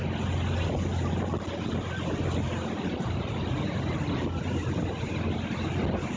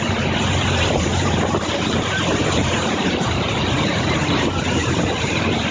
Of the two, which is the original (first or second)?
first